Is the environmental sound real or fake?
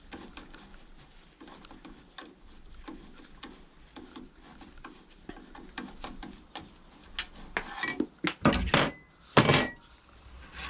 real